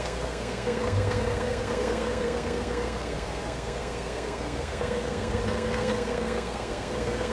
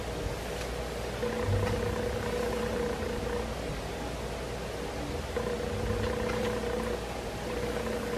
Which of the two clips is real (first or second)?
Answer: second